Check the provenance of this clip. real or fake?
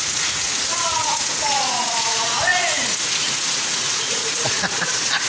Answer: fake